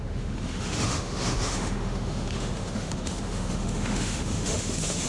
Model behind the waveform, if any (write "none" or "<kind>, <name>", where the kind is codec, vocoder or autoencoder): autoencoder, DAC-VAE